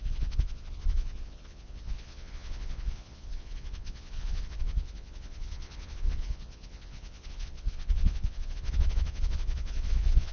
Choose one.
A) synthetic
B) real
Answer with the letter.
A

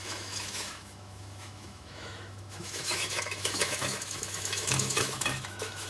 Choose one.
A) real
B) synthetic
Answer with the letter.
B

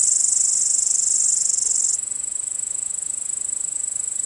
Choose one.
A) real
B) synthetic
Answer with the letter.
A